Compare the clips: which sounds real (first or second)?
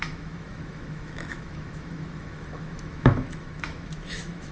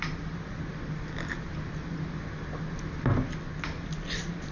second